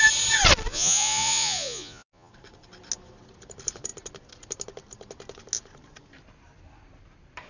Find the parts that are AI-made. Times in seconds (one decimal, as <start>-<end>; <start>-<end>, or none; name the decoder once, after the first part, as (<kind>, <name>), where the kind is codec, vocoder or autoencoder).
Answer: 0.7-2.3 (vocoder, Vocos)